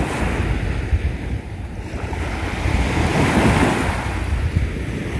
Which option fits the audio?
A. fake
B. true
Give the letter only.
B